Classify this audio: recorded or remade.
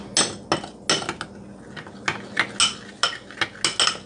recorded